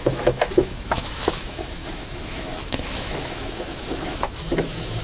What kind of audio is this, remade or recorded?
remade